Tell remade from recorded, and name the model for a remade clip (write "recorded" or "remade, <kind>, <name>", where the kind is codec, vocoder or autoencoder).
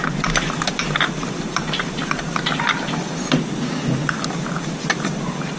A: recorded